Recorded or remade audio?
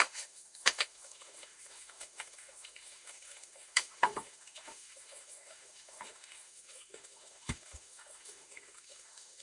remade